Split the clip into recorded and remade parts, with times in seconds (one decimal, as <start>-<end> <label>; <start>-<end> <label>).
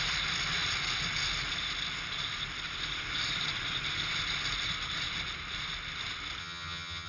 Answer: 0.0-6.4 recorded; 6.4-7.1 remade